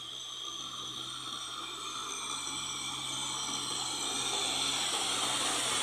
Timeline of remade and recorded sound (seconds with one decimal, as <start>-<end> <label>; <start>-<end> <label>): 0.0-5.8 recorded